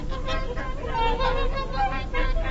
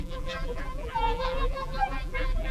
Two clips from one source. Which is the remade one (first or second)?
second